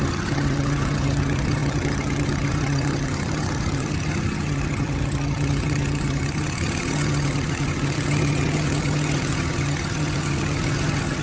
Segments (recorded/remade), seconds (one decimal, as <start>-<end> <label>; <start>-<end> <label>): 0.0-11.2 remade